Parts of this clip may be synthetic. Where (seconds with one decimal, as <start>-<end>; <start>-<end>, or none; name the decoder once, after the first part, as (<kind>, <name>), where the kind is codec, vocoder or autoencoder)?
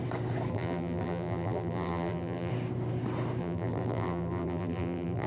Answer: 0.5-2.5 (vocoder, BigVGAN v2); 3.4-5.3